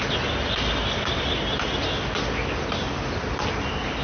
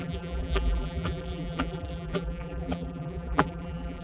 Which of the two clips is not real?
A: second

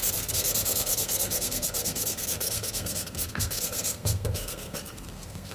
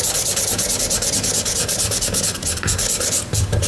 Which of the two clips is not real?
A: first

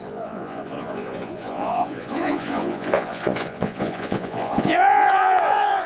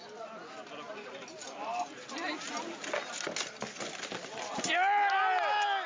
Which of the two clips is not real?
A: first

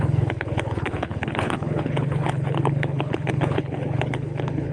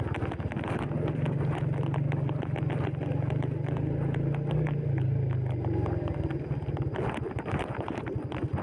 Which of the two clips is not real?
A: first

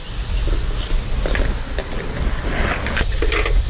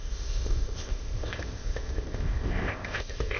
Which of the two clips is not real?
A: second